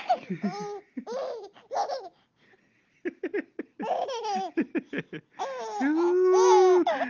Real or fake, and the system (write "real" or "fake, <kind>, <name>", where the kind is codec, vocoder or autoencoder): real